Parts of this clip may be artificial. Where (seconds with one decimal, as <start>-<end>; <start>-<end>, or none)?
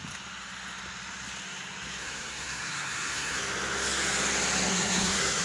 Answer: 2.0-3.4; 4.7-5.4